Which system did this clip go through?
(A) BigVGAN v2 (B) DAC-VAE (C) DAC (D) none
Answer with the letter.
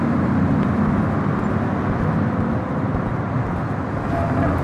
D